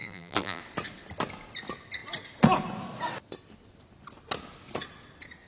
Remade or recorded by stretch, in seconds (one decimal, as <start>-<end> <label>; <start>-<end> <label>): 0.0-0.6 remade; 0.6-5.5 recorded